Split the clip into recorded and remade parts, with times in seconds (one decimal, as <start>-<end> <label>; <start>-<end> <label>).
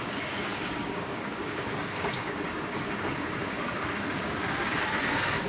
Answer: 0.0-5.5 remade